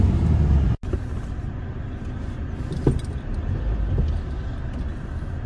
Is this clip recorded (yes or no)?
yes